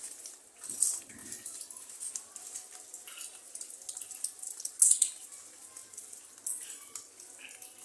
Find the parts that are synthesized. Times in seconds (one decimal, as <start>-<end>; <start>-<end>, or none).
none